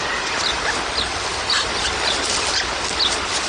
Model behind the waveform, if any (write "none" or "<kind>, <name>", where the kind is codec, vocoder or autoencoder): none